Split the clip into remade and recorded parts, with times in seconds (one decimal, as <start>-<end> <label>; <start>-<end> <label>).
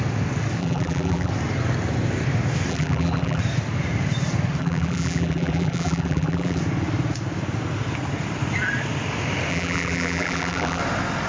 0.0-0.6 recorded; 0.6-1.3 remade; 1.3-2.7 recorded; 2.7-3.4 remade; 3.4-4.6 recorded; 4.6-6.6 remade; 6.6-9.5 recorded; 9.5-10.8 remade; 10.8-11.3 recorded